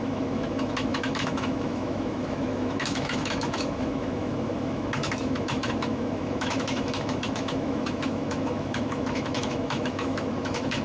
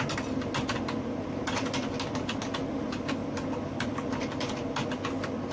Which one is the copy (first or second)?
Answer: first